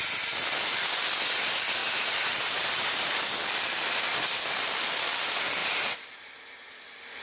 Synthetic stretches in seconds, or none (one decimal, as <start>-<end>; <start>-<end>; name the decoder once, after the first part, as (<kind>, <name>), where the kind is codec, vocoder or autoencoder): 1.8-3.4 (vocoder, BigVGAN v2); 5.6-6.4